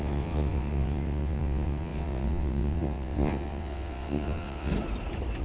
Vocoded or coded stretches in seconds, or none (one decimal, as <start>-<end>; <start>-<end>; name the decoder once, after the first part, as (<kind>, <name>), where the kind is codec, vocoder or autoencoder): 0.0-4.7 (vocoder, WaveNeXt)